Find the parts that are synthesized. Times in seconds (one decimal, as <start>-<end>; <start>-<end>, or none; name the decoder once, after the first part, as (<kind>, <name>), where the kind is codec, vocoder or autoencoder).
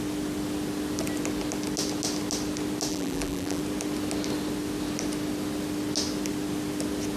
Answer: 2.9-3.6 (vocoder, BigVGAN v2)